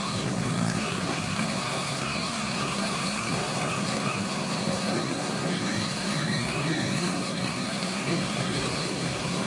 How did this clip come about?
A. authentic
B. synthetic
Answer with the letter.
B